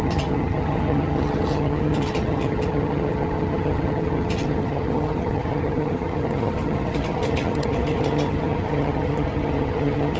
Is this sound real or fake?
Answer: fake